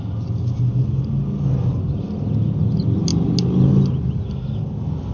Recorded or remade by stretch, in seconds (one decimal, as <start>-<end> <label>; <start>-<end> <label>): 0.0-5.1 recorded

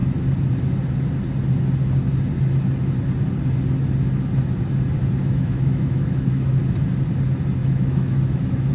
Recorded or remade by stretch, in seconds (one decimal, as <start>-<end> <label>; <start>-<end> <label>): 0.0-5.2 recorded; 5.2-6.6 remade; 6.6-7.6 recorded; 7.6-8.7 remade

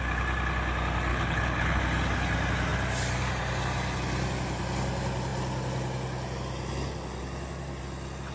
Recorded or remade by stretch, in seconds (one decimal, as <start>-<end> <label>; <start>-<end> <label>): 0.0-1.1 recorded; 1.1-1.8 remade; 1.8-8.3 recorded

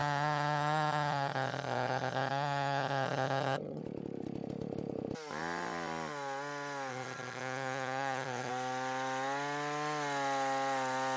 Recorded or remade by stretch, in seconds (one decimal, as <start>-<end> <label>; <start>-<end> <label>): 0.0-3.8 remade; 3.8-6.9 recorded; 6.9-8.5 remade; 8.5-11.2 recorded

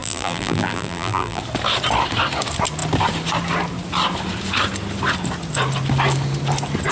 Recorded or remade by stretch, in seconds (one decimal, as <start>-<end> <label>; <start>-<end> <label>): 0.0-1.4 remade; 1.4-6.9 recorded